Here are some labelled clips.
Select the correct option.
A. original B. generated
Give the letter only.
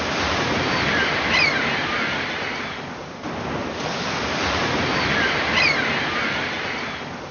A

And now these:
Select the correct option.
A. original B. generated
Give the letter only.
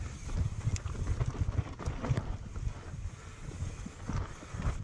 A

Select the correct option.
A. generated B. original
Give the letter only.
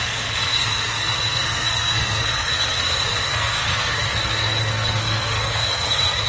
A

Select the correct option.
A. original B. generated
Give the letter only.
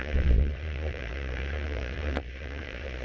B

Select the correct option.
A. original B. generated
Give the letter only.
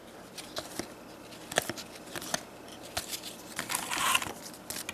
A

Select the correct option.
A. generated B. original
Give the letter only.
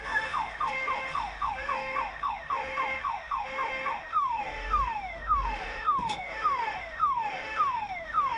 A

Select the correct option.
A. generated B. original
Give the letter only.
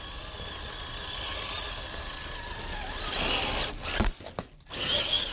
B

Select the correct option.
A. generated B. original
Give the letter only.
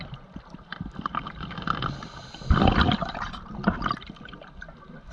B